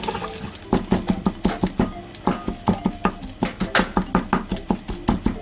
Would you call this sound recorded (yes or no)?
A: yes